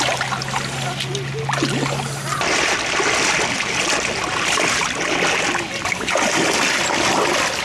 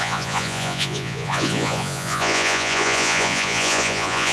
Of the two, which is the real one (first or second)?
first